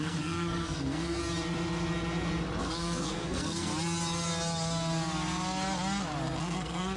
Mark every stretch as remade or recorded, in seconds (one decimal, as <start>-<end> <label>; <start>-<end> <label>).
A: 0.0-1.2 remade; 1.2-2.6 recorded; 2.6-3.7 remade; 3.7-6.4 recorded; 6.4-7.0 remade